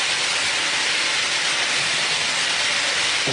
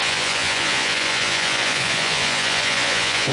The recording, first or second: first